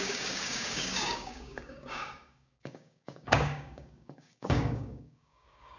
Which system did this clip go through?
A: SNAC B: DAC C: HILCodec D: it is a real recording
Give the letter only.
B